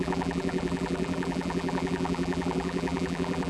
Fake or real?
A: fake